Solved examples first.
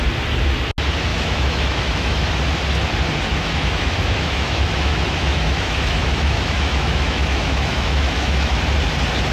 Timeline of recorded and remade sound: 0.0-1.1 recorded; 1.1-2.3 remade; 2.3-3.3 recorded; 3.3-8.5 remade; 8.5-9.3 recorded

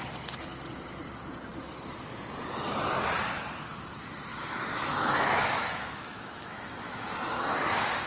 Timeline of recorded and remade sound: 0.0-4.3 recorded; 4.3-7.1 remade; 7.1-8.1 recorded

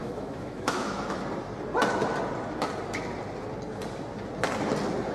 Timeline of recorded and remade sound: 0.0-1.2 remade; 1.2-5.1 recorded

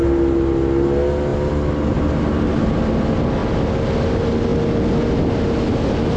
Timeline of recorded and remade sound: 0.0-6.2 recorded

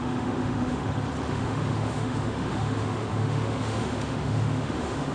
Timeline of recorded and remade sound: 0.0-0.8 remade; 0.8-1.3 recorded; 1.3-5.1 remade

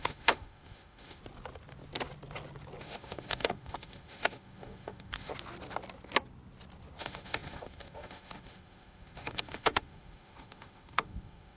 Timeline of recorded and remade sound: 0.0-1.2 remade; 1.2-2.8 recorded; 2.8-5.3 remade; 5.3-7.0 recorded; 7.0-11.6 remade

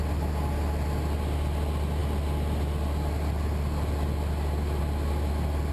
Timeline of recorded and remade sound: 0.0-5.7 recorded

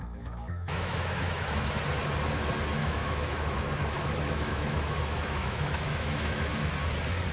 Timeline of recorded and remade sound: 0.0-1.7 remade; 1.7-2.8 recorded; 2.8-6.7 remade; 6.7-7.3 recorded